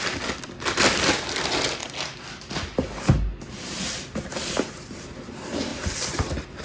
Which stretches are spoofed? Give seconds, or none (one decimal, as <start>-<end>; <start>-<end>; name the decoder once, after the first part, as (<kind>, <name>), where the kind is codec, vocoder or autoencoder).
0.0-1.8 (vocoder, BigVGAN v2); 3.4-6.6